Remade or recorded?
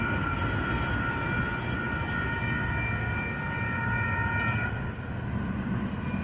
recorded